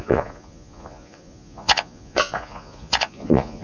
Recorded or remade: remade